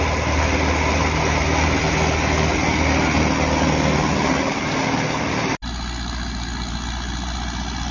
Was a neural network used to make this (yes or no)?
no